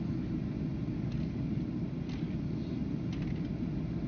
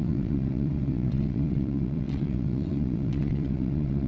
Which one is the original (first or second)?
first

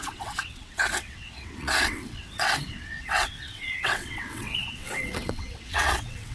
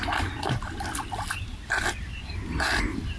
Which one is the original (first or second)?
second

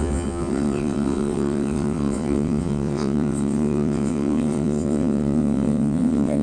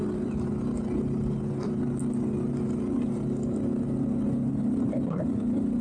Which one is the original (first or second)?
second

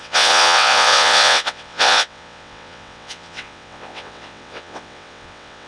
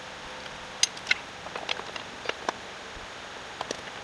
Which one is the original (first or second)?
second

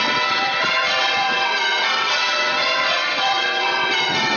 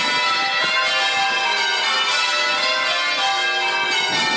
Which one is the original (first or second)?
second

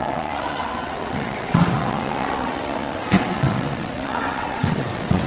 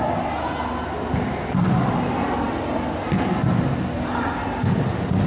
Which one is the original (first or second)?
second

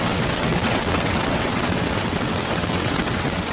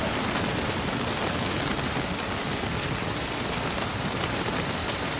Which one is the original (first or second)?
second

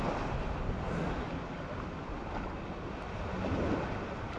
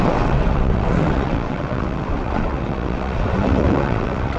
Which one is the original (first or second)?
first